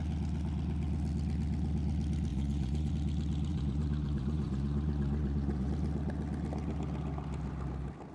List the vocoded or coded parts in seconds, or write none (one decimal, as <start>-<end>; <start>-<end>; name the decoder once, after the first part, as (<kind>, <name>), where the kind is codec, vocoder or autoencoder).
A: 2.3-2.9 (vocoder, Vocos); 3.5-5.7